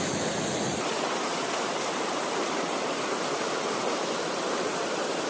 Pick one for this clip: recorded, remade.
recorded